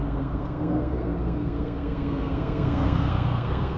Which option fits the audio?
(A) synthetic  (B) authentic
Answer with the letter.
A